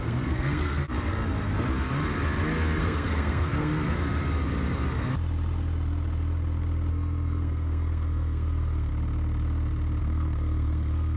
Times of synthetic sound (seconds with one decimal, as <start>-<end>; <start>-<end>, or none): 0.0-0.8; 2.8-3.7; 6.9-8.9; 10.0-11.2